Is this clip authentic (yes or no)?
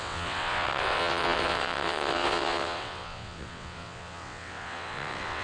no